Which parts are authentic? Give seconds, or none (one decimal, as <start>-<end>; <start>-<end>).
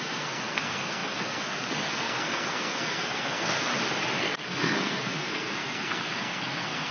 3.7-4.2